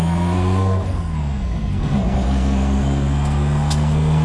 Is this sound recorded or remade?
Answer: remade